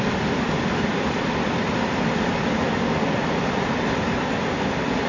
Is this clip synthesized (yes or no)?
no